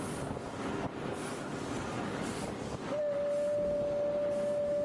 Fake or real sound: real